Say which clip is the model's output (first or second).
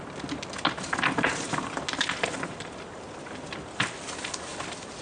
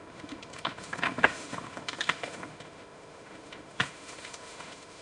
second